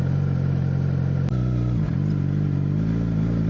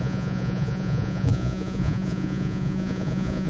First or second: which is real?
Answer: first